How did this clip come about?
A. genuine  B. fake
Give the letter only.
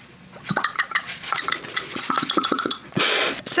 B